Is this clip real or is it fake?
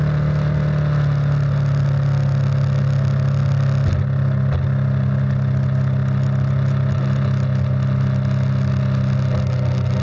real